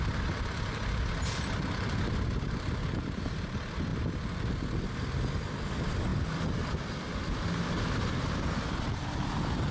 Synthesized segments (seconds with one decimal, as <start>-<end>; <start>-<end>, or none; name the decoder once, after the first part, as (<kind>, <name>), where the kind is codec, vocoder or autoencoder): none